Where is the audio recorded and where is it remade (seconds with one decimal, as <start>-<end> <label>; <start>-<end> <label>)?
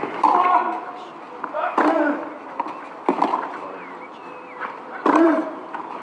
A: 0.0-1.1 remade; 1.1-3.1 recorded; 3.1-4.2 remade; 4.2-5.0 recorded; 5.0-6.0 remade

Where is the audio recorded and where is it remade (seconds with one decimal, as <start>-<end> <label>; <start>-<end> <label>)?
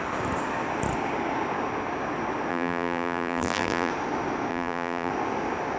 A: 0.0-2.5 recorded; 2.5-3.9 remade; 3.9-4.5 recorded; 4.5-5.1 remade; 5.1-5.8 recorded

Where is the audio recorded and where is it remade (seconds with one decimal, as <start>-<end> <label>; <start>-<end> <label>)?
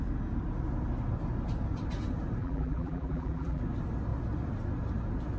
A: 0.0-2.4 recorded; 2.4-3.6 remade; 3.6-5.4 recorded